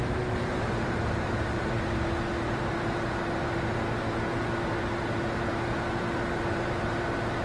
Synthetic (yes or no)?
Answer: yes